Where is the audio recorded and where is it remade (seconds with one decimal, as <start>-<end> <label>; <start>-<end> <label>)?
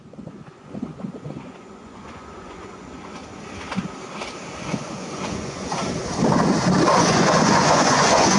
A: 0.0-3.2 remade; 3.2-4.6 recorded; 4.6-5.8 remade; 5.8-7.0 recorded; 7.0-8.4 remade